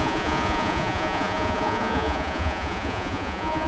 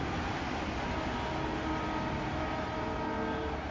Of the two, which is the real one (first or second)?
second